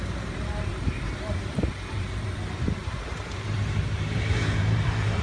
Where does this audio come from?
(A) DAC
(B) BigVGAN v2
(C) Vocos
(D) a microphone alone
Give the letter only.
B